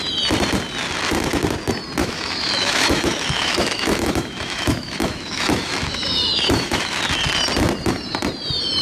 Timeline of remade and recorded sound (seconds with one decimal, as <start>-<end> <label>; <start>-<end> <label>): 0.0-2.0 recorded; 2.0-7.0 remade; 7.0-8.8 recorded